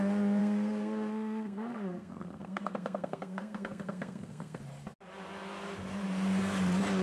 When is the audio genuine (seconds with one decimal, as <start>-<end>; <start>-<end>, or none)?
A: 0.0-0.4; 4.6-7.0